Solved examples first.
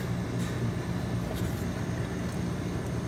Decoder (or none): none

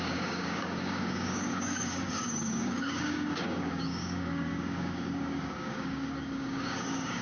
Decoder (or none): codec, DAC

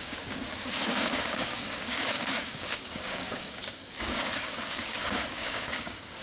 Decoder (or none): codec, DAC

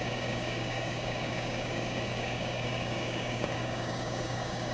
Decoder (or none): codec, DAC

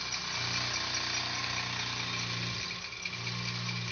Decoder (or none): none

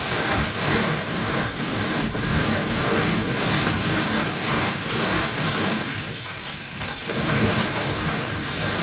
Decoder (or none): codec, DAC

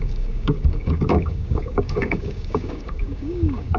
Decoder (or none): codec, DAC